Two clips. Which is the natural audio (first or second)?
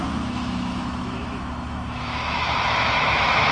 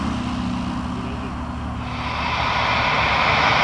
second